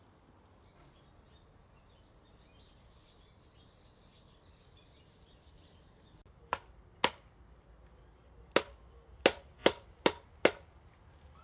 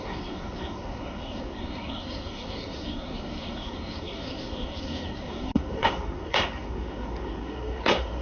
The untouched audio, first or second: first